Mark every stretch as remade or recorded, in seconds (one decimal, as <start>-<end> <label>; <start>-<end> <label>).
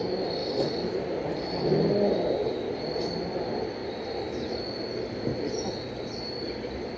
0.0-0.4 recorded; 0.4-1.9 remade; 1.9-3.8 recorded; 3.8-4.6 remade; 4.6-5.3 recorded; 5.3-6.4 remade; 6.4-7.0 recorded